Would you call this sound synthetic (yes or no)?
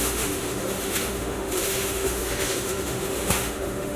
yes